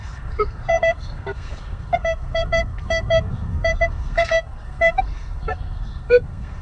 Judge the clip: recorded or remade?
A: remade